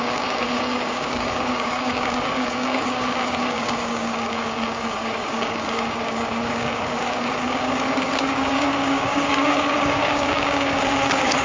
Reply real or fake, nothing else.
fake